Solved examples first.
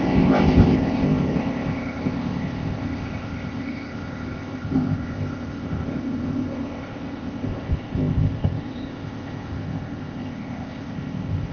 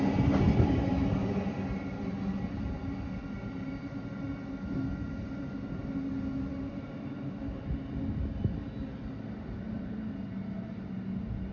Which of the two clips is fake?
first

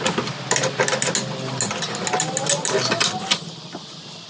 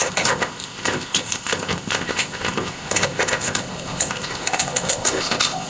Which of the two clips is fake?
second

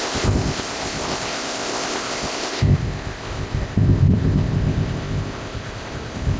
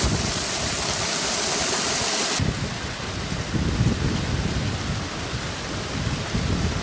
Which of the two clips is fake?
first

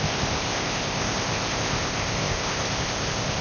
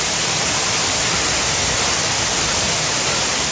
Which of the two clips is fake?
first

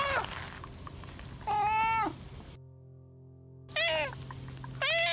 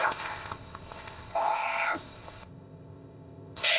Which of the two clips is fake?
second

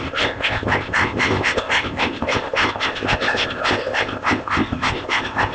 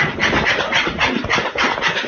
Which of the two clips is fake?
first